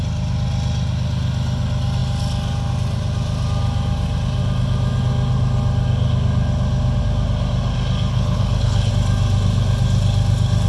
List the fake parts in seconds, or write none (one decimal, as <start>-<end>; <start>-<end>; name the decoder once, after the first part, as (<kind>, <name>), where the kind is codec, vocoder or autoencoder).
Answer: 8.1-8.9 (codec, HILCodec)